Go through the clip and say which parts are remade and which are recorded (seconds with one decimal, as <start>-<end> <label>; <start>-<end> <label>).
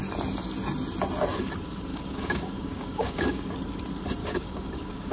0.0-1.9 recorded; 1.9-3.5 remade; 3.5-4.2 recorded; 4.2-5.1 remade